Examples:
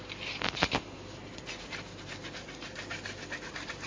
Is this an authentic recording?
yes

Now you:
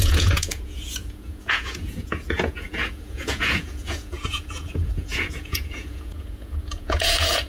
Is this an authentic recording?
no